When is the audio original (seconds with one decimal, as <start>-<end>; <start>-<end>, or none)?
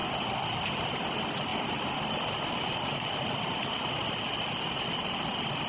0.0-5.7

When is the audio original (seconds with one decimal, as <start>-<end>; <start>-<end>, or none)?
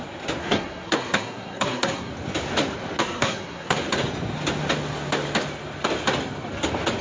0.0-0.4; 2.1-3.0; 3.8-7.0